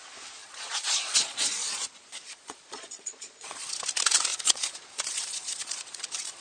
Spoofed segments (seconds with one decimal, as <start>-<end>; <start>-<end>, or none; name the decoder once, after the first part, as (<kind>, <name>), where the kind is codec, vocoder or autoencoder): 0.4-3.8 (vocoder, Vocos); 4.3-6.4